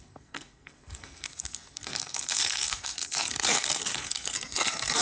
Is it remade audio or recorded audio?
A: remade